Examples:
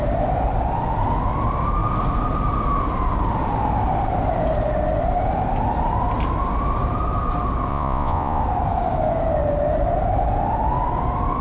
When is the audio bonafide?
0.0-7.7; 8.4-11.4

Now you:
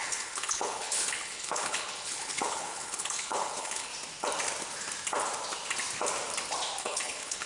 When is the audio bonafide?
3.9-6.8

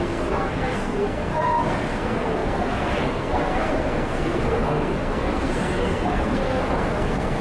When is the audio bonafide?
none

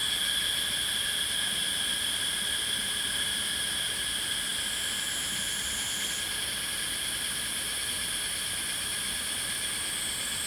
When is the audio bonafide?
0.0-10.5

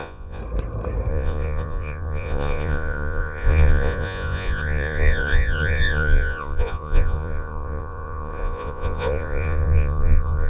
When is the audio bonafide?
0.4-1.1

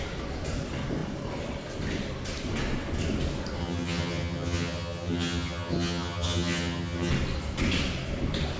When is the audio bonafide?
0.0-3.6; 7.1-8.6